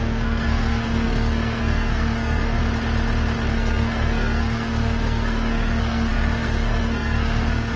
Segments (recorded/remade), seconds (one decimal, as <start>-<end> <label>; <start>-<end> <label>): 0.0-2.6 remade; 2.6-3.5 recorded; 3.5-7.8 remade